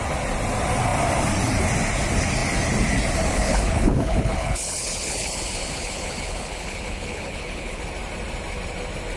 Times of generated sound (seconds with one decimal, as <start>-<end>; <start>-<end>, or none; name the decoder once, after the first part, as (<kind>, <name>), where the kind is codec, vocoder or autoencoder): 3.3-7.8 (codec, HILCodec)